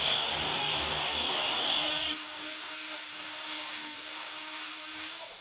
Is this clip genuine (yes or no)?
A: no